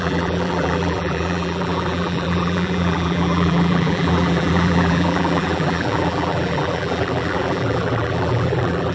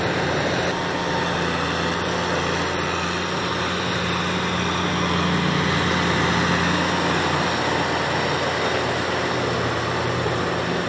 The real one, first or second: second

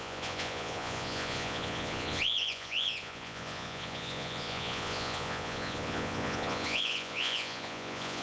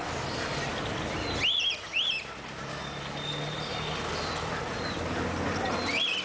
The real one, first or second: second